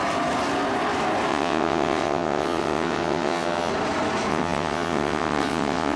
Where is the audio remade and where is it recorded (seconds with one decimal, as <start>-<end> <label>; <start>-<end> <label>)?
0.0-1.3 recorded; 1.3-3.7 remade; 3.7-4.3 recorded; 4.3-6.0 remade